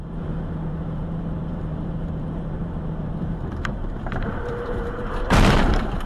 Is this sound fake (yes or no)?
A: yes